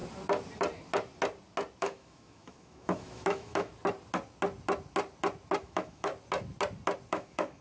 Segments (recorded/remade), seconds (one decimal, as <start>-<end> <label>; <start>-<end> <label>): 0.0-1.8 recorded; 1.8-3.7 remade; 3.7-5.6 recorded; 5.6-6.1 remade; 6.1-7.1 recorded; 7.1-7.6 remade